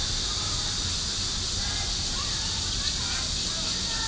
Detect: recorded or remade recorded